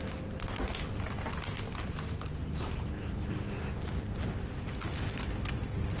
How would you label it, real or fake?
real